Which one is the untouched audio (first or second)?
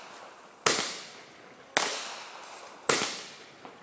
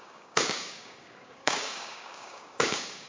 first